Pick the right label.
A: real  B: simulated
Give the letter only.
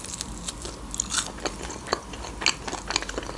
A